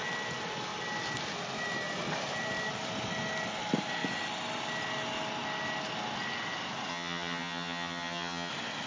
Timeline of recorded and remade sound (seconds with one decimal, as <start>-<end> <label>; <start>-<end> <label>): 0.0-6.9 recorded; 6.9-8.5 remade; 8.5-8.9 recorded